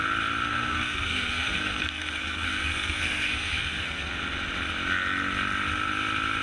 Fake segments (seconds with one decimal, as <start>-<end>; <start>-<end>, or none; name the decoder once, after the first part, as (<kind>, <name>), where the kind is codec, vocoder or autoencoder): 0.5-4.1 (codec, SNAC)